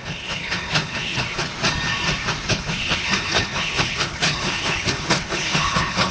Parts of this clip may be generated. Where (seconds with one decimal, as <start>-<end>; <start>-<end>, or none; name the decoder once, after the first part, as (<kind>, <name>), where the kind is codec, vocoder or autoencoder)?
0.0-1.5 (codec, HILCodec); 2.5-6.1